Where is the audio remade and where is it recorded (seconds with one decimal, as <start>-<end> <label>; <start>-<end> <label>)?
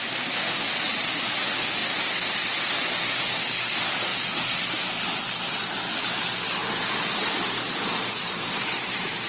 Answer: 0.0-1.8 remade; 1.8-2.5 recorded; 2.5-9.3 remade